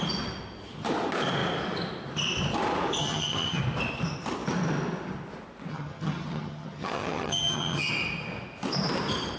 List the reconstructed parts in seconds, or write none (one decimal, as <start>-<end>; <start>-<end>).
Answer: 3.0-3.6; 5.7-7.9